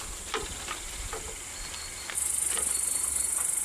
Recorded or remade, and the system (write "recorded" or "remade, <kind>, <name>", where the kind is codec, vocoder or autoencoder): recorded